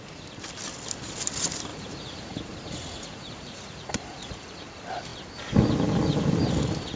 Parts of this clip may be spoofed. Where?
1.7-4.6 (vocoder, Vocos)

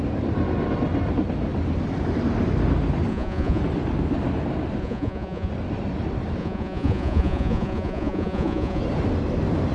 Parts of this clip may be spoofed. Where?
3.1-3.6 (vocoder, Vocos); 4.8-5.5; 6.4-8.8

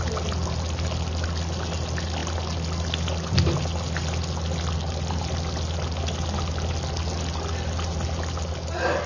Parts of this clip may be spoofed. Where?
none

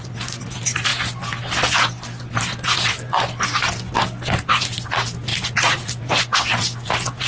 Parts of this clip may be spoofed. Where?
5.3-5.9 (vocoder, Vocos)